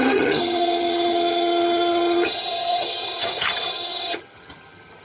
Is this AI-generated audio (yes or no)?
yes